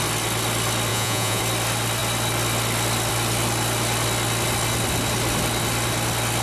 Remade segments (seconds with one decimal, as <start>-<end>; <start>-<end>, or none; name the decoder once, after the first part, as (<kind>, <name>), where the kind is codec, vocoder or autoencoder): 0.9-1.4 (vocoder, Vocos)